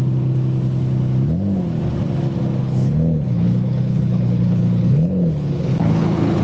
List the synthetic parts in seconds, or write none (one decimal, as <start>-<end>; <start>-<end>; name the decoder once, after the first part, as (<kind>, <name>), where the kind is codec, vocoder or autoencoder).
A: 2.6-6.4 (codec, HILCodec)